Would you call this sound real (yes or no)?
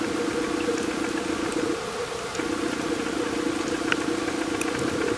yes